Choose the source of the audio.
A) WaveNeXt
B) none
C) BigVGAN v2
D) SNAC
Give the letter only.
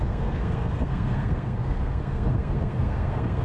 D